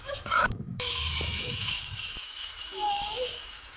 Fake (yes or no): yes